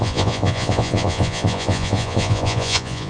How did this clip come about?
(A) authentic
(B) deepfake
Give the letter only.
B